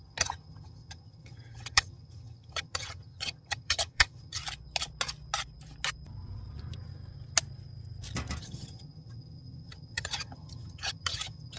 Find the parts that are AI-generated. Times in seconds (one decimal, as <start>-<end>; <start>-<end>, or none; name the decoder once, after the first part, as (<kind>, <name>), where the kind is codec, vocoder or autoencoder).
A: 0.0-4.4 (vocoder, HiFi-GAN); 8.4-11.6